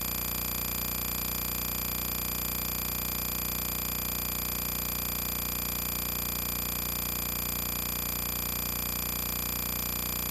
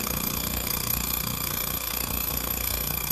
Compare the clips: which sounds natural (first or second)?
first